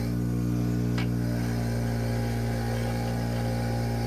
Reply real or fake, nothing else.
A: real